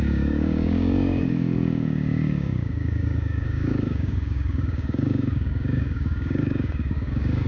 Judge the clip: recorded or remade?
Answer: remade